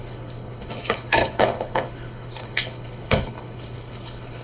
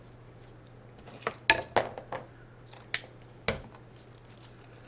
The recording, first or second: second